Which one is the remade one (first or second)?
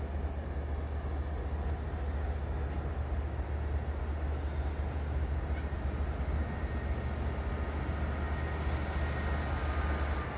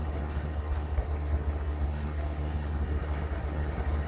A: second